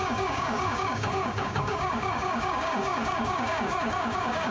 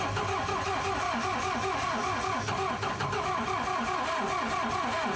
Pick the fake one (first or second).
first